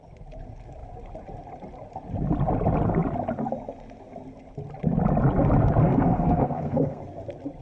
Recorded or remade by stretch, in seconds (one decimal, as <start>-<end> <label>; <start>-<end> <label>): 0.0-5.8 recorded; 5.8-7.0 remade; 7.0-7.6 recorded